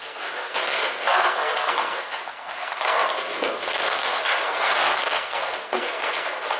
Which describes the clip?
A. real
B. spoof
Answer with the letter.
B